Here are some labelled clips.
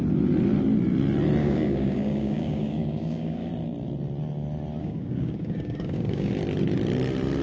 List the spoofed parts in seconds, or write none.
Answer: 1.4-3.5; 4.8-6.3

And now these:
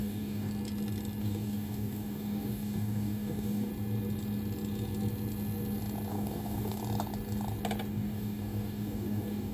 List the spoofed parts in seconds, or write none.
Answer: 0.0-0.5; 1.2-3.7; 6.1-6.8; 7.9-9.5

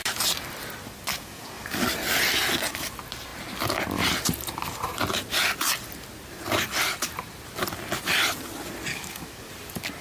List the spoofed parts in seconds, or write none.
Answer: 1.1-1.9; 8.9-9.5